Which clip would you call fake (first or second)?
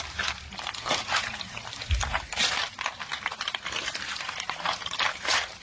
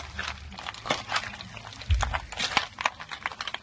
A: first